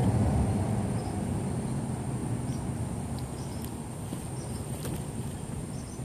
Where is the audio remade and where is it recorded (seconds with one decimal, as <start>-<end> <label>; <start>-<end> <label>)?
0.0-6.0 recorded